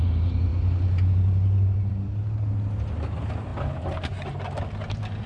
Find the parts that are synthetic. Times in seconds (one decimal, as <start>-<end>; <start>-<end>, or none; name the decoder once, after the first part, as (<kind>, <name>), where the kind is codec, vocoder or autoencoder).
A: none